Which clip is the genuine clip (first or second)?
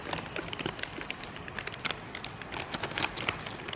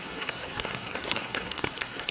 first